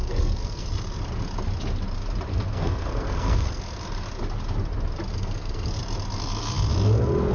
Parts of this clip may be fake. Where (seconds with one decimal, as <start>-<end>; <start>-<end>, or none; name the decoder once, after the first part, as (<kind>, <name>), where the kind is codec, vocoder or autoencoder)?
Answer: 0.0-0.7 (codec, SNAC); 2.3-3.6; 5.1-5.8